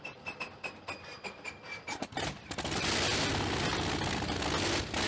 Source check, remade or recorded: recorded